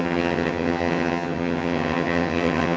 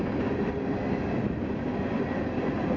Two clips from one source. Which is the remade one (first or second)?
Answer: first